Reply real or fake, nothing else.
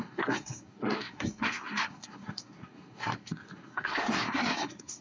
fake